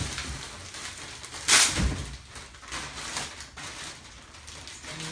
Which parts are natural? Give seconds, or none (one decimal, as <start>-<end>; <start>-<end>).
0.0-5.1

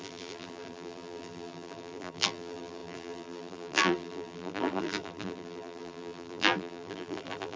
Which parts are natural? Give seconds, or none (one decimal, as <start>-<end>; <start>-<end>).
none

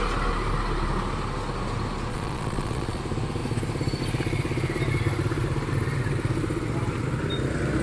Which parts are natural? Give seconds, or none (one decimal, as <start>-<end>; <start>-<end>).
0.0-2.1; 3.0-7.8

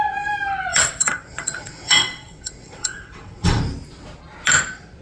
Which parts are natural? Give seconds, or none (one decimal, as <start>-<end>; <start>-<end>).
0.0-0.7; 3.6-5.0

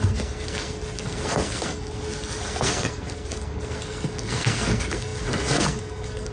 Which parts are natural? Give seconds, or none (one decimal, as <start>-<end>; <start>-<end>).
none

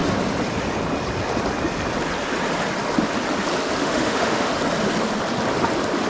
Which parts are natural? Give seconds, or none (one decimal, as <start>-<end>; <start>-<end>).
0.0-3.8; 4.5-6.1